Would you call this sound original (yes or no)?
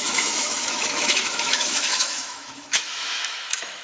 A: no